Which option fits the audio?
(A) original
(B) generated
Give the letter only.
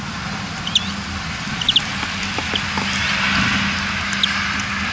A